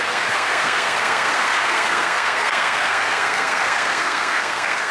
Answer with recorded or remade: remade